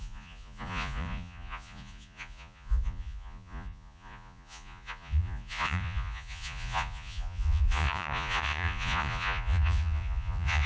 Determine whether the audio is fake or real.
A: fake